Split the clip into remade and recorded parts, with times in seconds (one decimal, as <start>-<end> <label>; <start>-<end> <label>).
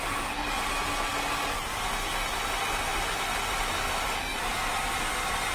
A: 0.0-4.3 recorded; 4.3-5.1 remade; 5.1-5.5 recorded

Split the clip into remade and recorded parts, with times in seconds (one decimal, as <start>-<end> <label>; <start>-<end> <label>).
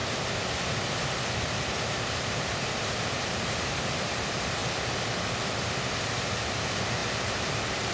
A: 0.0-2.1 recorded; 2.1-4.6 remade; 4.6-5.8 recorded; 5.8-7.9 remade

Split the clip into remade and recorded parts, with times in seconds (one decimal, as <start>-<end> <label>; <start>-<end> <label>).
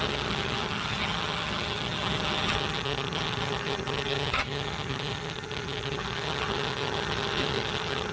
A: 0.0-8.1 remade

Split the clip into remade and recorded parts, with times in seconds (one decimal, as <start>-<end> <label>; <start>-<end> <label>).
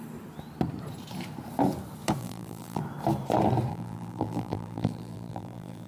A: 0.0-2.2 recorded; 2.2-2.8 remade; 2.8-3.7 recorded; 3.7-5.9 remade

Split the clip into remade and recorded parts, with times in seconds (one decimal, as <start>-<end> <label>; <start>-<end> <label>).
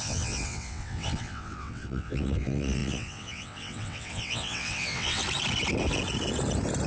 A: 0.0-5.2 remade; 5.2-6.9 recorded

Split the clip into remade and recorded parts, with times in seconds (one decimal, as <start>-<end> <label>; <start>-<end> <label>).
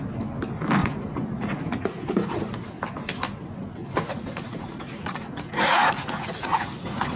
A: 0.0-0.8 recorded; 0.8-2.8 remade; 2.8-3.8 recorded; 3.8-7.2 remade